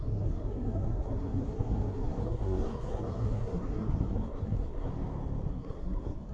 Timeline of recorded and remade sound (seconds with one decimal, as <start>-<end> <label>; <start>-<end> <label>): 0.0-4.9 remade; 4.9-5.5 recorded; 5.5-6.3 remade